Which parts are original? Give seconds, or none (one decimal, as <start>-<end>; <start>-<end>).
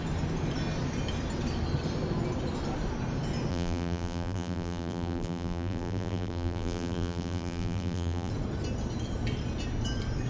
0.0-3.5; 8.3-10.3